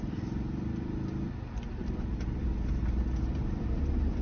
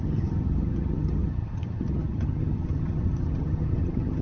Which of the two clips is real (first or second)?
first